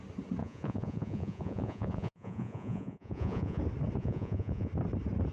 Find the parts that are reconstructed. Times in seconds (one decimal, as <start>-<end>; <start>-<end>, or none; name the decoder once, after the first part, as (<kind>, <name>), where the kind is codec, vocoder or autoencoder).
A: 0.4-3.6 (vocoder, Vocos); 4.0-4.7